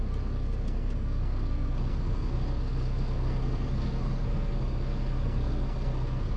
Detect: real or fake fake